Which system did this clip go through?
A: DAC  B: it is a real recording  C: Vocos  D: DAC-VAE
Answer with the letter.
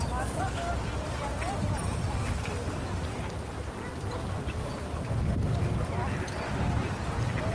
B